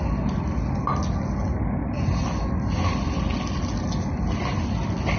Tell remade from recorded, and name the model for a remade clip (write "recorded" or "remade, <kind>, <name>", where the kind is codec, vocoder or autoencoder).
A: recorded